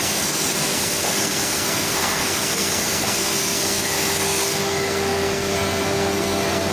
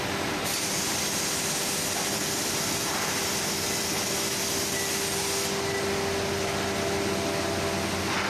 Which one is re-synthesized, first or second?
first